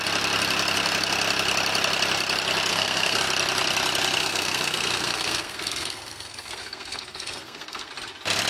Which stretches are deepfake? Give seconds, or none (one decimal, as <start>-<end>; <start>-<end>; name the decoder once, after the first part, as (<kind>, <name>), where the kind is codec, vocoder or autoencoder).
2.7-3.2 (codec, SNAC); 4.2-7.9

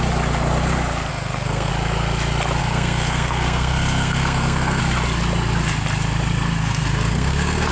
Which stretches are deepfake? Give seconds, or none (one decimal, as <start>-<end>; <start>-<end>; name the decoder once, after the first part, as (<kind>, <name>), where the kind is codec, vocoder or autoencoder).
1.1-1.7 (codec, SNAC); 2.6-4.8; 6.6-7.7

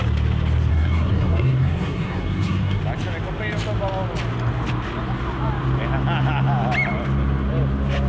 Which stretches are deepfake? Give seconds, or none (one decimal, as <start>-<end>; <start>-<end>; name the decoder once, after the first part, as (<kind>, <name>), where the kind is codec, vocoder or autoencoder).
0.7-2.8 (codec, SNAC)

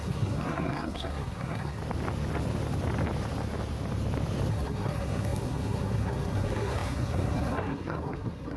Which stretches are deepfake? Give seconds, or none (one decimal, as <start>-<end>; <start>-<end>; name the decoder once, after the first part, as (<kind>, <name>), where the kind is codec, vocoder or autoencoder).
0.0-1.8 (codec, SNAC); 4.5-8.6

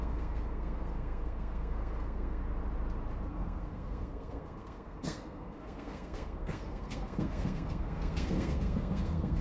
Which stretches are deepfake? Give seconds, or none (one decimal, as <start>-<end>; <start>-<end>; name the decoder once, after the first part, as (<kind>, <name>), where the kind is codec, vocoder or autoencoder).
0.0-2.4 (codec, SNAC); 3.3-9.4

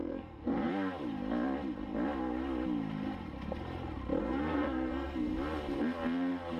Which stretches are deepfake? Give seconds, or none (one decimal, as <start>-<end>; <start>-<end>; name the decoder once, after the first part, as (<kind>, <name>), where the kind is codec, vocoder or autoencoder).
0.0-0.7 (codec, SNAC); 4.2-5.3

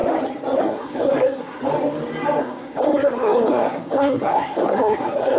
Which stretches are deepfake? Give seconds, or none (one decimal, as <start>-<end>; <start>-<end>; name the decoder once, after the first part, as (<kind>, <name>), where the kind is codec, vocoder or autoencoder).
0.6-1.6 (codec, SNAC); 2.4-5.4